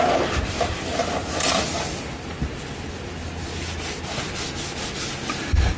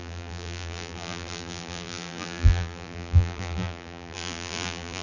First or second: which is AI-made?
second